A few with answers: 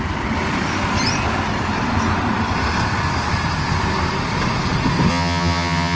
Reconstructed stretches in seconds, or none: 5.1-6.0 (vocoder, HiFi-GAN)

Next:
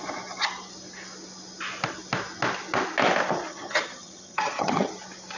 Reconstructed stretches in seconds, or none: 3.5-4.9 (vocoder, HiFi-GAN)

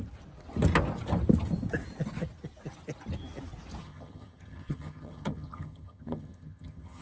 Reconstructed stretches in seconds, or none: 3.8-7.0 (vocoder, HiFi-GAN)

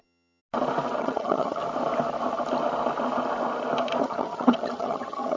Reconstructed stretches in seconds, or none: 0.0-0.4 (vocoder, HiFi-GAN); 1.0-1.6; 4.0-5.4